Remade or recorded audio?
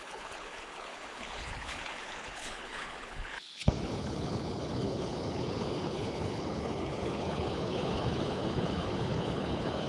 remade